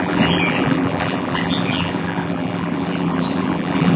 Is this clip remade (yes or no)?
yes